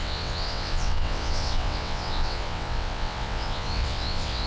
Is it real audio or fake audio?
fake